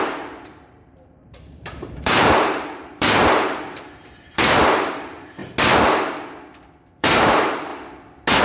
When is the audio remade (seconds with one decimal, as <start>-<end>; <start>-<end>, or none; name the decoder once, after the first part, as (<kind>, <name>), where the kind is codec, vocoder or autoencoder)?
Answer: 0.0-5.4 (vocoder, BigVGAN v2); 6.9-7.7